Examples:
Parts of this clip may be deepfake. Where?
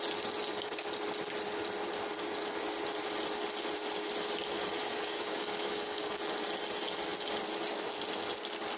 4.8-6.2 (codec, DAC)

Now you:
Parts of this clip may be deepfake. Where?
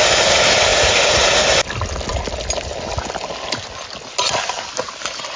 none